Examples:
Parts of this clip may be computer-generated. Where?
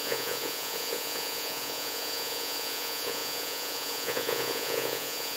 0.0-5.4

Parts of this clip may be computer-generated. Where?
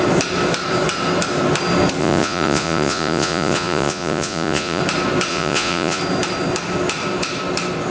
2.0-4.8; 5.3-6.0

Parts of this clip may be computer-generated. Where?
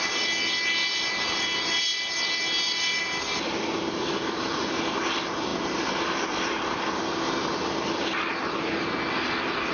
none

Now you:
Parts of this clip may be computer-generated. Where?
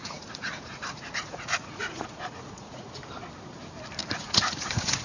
0.0-3.0; 4.0-5.0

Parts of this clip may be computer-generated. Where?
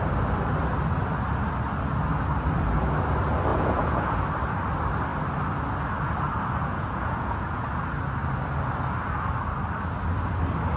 3.5-4.1; 6.7-7.6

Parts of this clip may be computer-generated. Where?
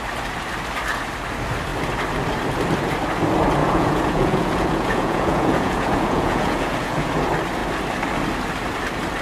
3.6-7.1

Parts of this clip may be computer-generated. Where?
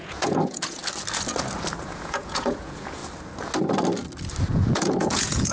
0.0-0.8; 1.8-3.0; 4.5-5.5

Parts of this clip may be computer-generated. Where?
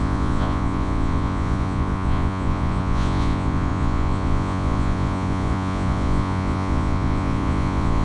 0.0-8.0